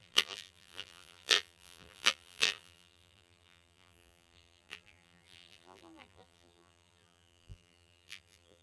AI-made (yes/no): yes